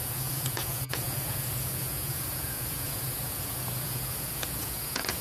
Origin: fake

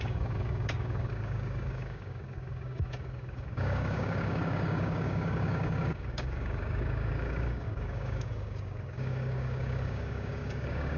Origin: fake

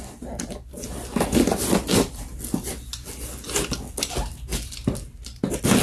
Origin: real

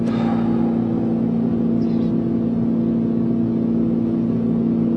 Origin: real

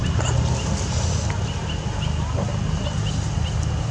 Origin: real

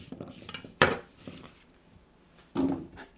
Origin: fake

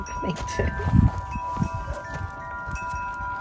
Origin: real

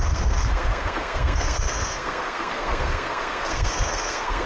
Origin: fake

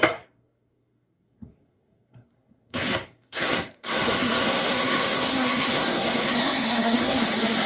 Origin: fake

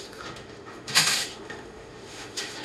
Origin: fake